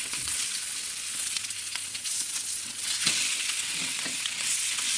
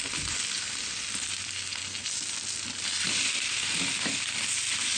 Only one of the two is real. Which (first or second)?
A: second